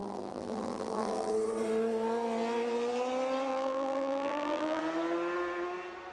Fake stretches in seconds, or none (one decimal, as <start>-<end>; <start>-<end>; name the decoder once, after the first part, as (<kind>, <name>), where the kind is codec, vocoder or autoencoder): 0.0-1.3 (vocoder, BigVGAN v2); 3.5-4.8